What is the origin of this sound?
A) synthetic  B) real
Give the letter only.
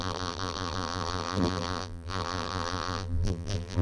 A